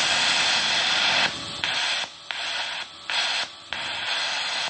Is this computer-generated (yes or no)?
no